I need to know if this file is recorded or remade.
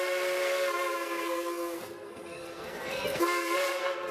remade